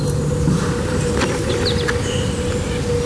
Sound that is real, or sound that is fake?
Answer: real